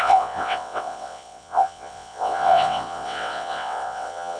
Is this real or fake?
fake